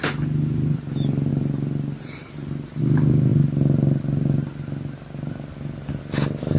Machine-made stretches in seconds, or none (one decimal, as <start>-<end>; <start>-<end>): none